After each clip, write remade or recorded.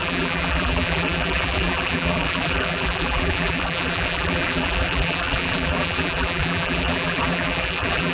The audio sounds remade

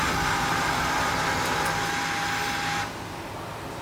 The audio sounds recorded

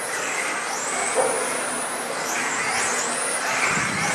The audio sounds recorded